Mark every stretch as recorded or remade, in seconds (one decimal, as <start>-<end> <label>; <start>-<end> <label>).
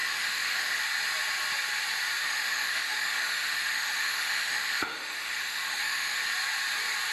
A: 0.0-0.8 remade; 0.8-2.2 recorded; 2.2-6.2 remade; 6.2-7.1 recorded